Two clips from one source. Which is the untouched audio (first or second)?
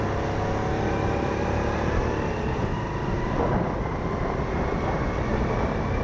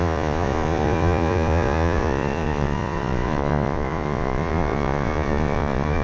first